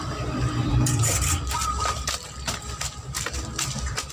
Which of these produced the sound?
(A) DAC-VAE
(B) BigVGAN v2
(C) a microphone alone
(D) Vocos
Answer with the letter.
B